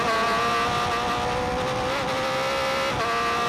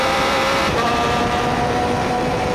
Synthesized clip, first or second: second